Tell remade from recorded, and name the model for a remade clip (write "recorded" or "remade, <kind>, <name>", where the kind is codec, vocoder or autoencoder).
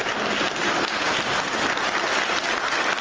recorded